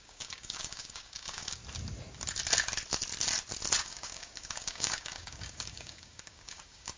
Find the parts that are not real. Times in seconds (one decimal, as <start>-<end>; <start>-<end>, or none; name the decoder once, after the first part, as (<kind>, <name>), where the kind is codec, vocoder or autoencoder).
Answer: 0.0-1.6 (codec, DAC); 3.8-7.0